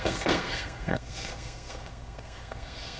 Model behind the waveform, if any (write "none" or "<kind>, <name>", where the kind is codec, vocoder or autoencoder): codec, SNAC